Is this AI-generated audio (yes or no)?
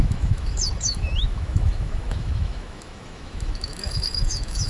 yes